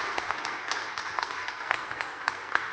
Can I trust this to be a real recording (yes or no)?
no